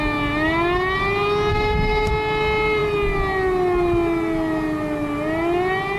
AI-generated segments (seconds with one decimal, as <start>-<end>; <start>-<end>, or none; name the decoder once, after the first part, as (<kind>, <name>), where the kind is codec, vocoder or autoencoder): 1.5-2.1 (codec, SNAC)